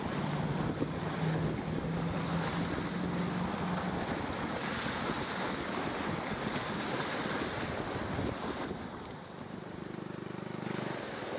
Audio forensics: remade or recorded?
recorded